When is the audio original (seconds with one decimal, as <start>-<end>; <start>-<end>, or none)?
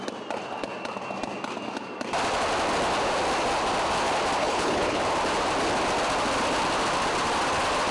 0.0-4.4; 5.0-7.9